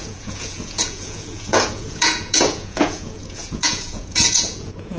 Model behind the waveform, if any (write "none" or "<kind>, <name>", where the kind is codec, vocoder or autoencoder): vocoder, Vocos